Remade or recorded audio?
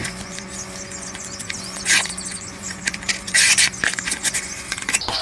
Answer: remade